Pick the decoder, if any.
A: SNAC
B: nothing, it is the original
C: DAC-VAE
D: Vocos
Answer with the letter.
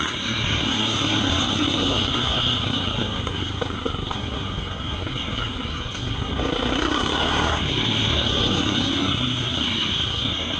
A